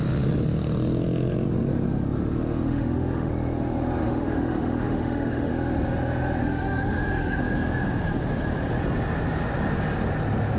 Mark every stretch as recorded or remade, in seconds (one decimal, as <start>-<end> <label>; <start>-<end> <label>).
0.0-2.6 recorded; 2.6-3.3 remade; 3.3-4.0 recorded; 4.0-5.5 remade; 5.5-6.4 recorded; 6.4-7.4 remade; 7.4-10.6 recorded